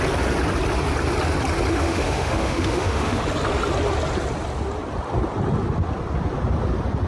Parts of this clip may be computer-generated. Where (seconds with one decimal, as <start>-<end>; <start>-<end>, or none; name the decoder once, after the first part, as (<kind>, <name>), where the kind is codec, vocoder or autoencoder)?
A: 1.7-3.2 (autoencoder, DAC-VAE)